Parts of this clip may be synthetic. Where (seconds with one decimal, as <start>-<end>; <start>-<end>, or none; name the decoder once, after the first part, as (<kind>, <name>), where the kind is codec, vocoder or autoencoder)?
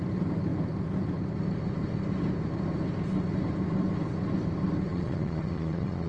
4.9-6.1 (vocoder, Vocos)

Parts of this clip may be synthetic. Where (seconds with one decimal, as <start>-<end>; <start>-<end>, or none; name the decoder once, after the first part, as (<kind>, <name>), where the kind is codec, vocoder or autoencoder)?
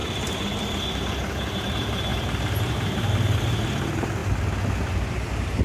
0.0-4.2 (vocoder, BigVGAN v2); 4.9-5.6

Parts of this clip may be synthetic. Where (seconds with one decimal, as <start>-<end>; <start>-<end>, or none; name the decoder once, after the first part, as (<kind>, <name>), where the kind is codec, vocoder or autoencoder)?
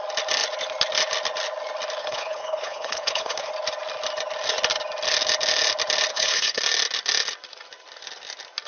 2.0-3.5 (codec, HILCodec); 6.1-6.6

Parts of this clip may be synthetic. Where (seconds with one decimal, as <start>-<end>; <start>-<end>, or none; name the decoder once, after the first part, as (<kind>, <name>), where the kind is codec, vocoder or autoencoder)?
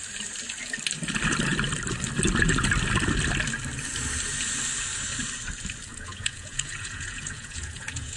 5.9-8.2 (vocoder, Vocos)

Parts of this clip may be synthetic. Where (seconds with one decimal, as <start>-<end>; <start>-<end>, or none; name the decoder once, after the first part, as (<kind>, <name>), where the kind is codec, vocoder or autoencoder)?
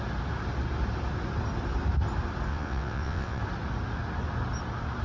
2.5-3.4 (vocoder, WaveNeXt)